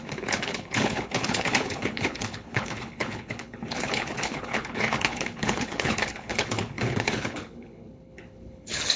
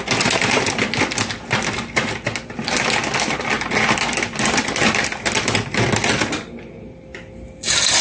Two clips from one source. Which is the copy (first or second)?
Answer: first